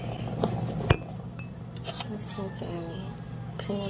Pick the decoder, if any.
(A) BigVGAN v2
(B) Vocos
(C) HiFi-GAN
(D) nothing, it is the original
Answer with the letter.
D